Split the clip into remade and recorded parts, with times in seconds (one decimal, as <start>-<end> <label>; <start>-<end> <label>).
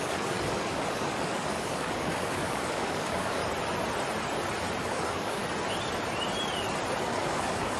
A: 0.0-3.4 remade; 3.4-4.8 recorded; 4.8-5.4 remade; 5.4-7.0 recorded; 7.0-7.8 remade